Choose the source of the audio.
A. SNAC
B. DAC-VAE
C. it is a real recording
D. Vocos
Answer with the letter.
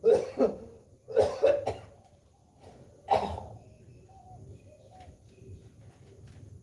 C